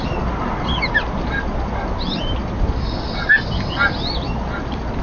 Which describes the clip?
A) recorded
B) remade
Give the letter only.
A